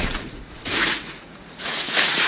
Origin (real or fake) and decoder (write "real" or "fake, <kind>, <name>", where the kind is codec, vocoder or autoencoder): fake, vocoder, Vocos